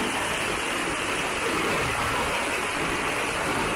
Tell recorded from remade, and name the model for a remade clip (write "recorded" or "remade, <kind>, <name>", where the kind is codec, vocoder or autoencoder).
recorded